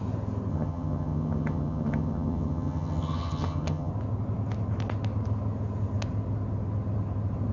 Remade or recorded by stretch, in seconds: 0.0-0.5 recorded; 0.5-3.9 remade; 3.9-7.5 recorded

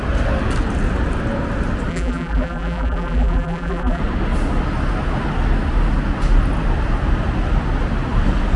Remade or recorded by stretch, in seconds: 0.0-1.9 recorded; 1.9-4.0 remade; 4.0-8.6 recorded